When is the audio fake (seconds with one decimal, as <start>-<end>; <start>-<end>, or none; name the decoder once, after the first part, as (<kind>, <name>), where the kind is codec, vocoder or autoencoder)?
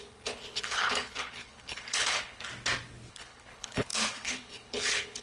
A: 0.0-2.5 (codec, HILCodec); 3.1-5.2